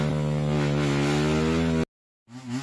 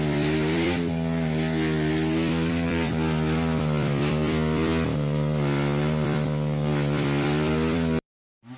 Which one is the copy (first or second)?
second